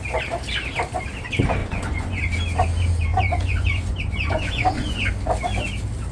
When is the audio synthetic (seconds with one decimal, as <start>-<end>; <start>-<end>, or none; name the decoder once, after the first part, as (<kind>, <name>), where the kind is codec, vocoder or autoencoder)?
1.6-2.2 (vocoder, Vocos); 3.1-5.1